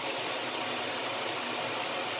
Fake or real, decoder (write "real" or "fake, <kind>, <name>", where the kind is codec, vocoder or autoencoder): real